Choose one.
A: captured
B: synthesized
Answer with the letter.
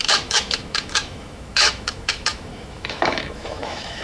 B